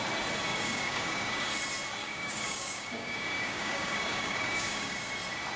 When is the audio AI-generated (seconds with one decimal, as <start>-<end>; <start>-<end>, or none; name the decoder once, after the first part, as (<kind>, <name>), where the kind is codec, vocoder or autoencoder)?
0.5-1.5 (codec, DAC); 2.0-5.1